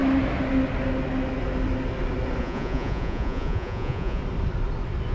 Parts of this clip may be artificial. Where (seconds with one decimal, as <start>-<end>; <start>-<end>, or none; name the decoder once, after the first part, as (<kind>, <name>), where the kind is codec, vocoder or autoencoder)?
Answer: 2.4-4.2 (vocoder, Vocos)